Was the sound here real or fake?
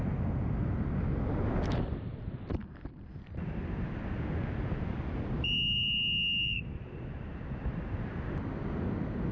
real